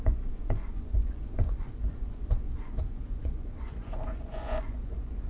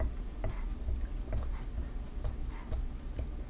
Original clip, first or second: second